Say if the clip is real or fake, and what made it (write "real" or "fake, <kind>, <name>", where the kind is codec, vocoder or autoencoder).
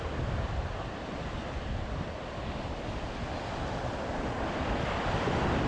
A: fake, vocoder, BigVGAN v2